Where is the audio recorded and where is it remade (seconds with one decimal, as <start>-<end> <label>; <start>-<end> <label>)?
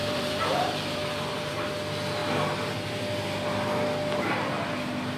0.0-1.7 remade; 1.7-5.2 recorded